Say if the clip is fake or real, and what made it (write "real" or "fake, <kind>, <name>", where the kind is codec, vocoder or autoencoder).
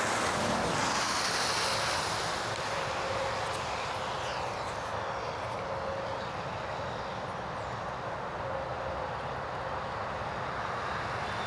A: real